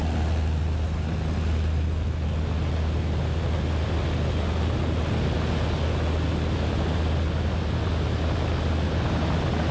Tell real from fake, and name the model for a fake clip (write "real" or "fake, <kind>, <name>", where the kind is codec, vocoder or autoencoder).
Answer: real